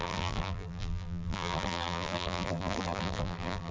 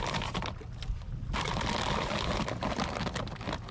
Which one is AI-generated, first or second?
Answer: first